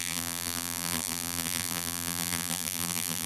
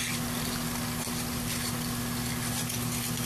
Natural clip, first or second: second